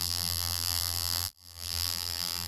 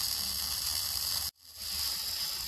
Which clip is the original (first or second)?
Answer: second